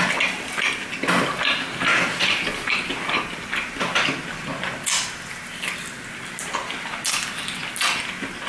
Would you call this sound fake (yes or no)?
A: no